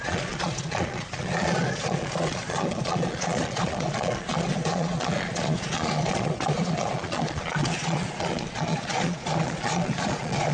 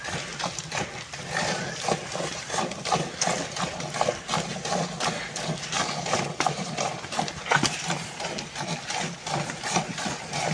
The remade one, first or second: first